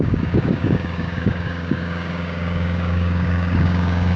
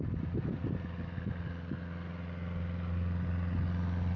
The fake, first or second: first